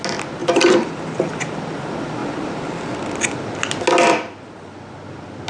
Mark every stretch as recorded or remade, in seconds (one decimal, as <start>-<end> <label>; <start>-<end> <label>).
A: 0.0-0.4 recorded; 0.4-1.4 remade; 1.4-2.2 recorded; 2.2-2.9 remade; 2.9-5.5 recorded